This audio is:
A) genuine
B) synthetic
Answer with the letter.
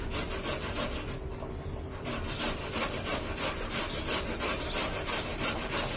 A